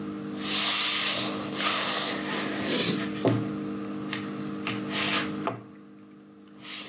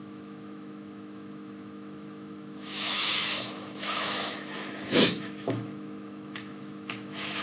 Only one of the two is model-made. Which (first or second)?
second